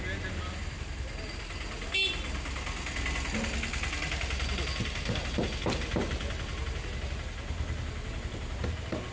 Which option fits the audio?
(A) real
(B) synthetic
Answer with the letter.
A